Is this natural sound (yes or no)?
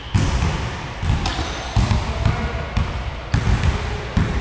yes